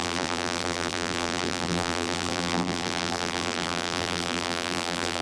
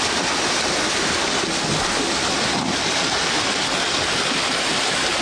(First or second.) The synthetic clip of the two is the first